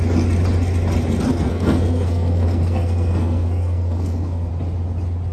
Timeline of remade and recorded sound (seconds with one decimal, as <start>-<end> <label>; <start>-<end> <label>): 0.0-1.3 recorded; 1.3-4.5 remade; 4.5-5.3 recorded